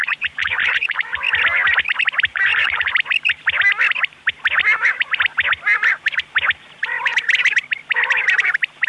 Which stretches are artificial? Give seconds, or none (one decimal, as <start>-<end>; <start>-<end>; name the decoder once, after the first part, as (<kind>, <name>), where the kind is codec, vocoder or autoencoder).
0.0-1.2 (vocoder, Vocos); 2.3-2.9